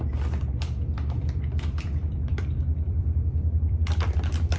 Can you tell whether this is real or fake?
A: fake